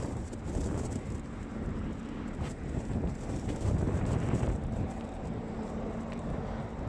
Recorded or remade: remade